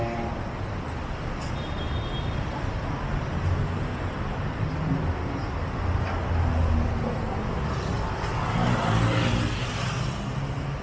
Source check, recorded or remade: recorded